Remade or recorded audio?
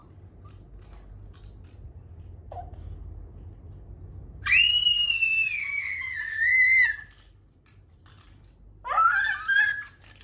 recorded